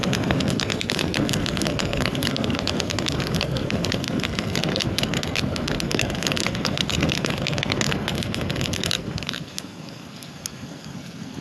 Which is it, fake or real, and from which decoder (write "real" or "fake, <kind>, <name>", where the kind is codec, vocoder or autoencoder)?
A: fake, codec, SNAC